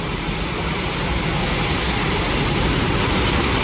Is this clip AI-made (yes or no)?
no